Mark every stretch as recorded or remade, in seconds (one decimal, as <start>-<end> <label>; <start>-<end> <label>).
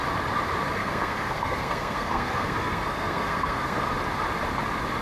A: 0.0-0.8 recorded; 0.8-3.8 remade; 3.8-5.0 recorded